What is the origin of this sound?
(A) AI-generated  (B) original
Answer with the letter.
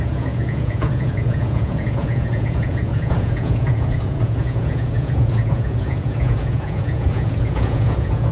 A